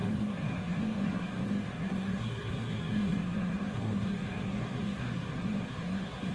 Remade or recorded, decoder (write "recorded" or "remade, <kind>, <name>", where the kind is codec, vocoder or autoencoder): remade, codec, SNAC